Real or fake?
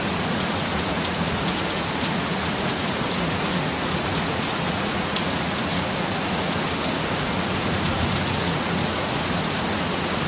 fake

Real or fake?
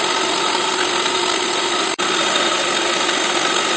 real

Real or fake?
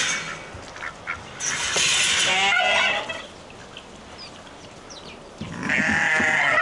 real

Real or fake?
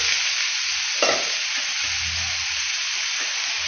real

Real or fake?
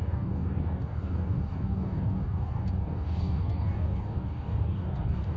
fake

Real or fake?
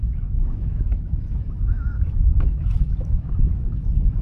fake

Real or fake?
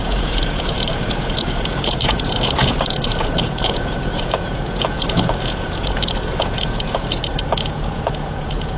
fake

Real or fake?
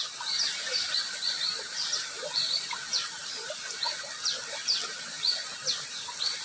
fake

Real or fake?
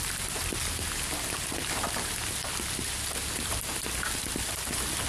real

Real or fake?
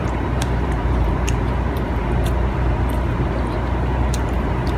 fake